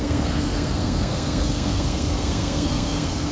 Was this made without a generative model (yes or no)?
no